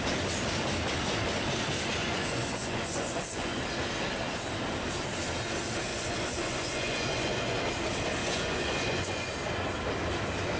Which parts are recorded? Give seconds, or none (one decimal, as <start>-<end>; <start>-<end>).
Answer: 0.0-2.0; 3.6-5.9; 7.6-8.2; 9.3-10.6